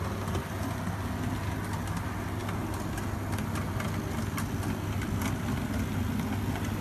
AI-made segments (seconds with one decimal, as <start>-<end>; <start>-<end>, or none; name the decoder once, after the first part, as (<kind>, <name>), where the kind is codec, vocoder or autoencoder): none